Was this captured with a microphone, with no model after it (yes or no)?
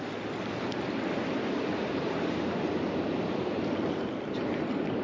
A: no